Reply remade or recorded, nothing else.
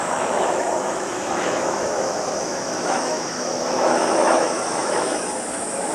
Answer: remade